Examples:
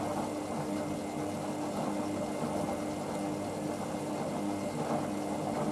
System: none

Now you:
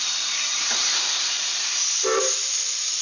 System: vocoder, BigVGAN v2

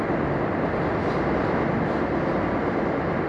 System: none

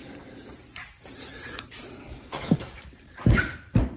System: vocoder, BigVGAN v2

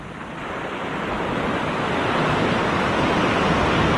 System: none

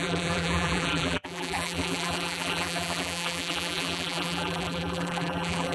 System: vocoder, BigVGAN v2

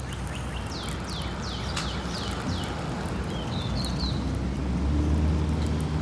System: none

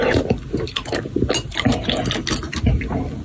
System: none